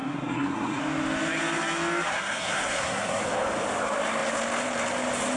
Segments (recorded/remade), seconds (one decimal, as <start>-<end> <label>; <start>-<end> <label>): 0.0-0.8 remade; 0.8-2.1 recorded; 2.1-3.2 remade; 3.2-5.4 recorded